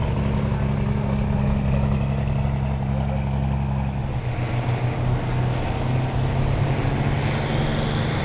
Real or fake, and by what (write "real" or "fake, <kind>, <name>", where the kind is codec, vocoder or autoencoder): real